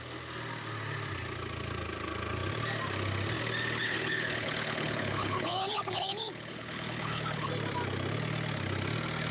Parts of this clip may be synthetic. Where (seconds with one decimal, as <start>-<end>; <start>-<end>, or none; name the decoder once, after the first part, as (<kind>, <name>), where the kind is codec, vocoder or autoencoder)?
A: 3.8-7.5 (codec, HILCodec)